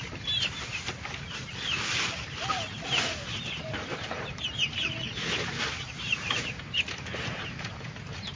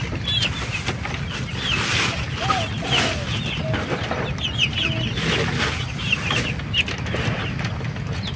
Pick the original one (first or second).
second